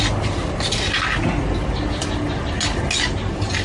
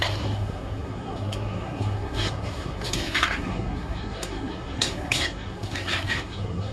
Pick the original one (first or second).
first